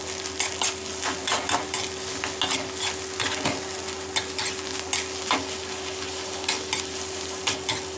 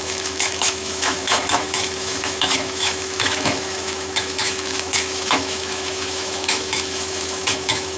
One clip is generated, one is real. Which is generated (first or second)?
second